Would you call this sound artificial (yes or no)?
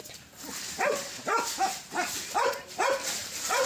yes